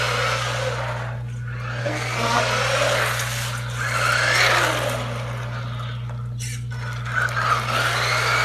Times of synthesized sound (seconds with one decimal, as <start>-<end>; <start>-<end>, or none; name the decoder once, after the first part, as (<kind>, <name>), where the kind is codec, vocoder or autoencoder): 1.8-2.4 (codec, SNAC)